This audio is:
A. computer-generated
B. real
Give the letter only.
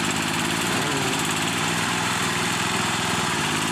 A